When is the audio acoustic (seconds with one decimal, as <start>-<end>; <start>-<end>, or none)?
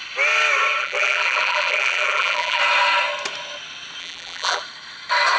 0.0-0.8; 2.6-4.0; 4.6-5.4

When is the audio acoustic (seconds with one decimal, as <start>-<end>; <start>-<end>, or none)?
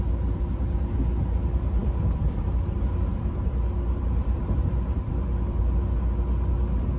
0.0-1.8; 5.6-7.0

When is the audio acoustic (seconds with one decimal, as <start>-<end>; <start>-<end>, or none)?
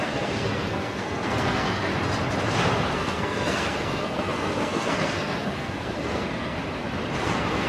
1.9-2.9; 6.6-7.2